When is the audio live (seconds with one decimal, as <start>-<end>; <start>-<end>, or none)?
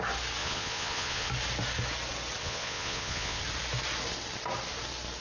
0.0-0.4; 1.3-2.4; 3.4-5.2